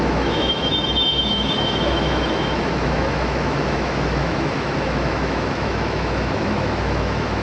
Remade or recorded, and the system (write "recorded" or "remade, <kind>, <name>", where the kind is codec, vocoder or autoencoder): remade, autoencoder, DAC-VAE